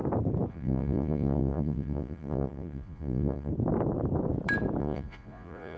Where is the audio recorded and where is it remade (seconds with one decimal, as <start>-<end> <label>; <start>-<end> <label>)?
0.0-0.5 recorded; 0.5-3.5 remade; 3.5-4.8 recorded; 4.8-5.8 remade